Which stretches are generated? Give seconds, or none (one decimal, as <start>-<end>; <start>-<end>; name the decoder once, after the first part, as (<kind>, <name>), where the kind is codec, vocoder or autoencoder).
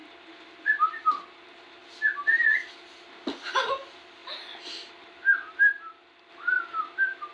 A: none